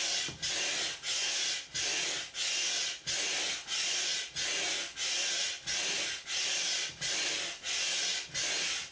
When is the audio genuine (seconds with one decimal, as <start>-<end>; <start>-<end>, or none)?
0.0-8.9